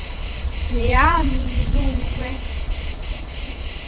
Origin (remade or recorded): remade